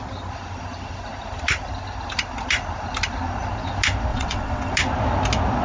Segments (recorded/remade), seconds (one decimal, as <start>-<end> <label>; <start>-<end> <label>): 0.0-4.1 recorded; 4.1-4.7 remade; 4.7-5.6 recorded